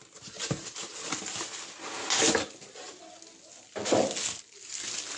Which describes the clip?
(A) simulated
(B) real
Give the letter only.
B